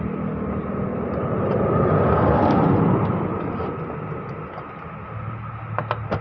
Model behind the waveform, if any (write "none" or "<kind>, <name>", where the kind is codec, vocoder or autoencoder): none